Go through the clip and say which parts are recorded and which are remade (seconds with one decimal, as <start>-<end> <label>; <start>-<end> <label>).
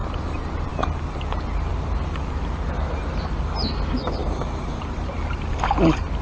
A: 0.0-0.7 remade; 0.7-4.2 recorded; 4.2-4.8 remade; 4.8-6.2 recorded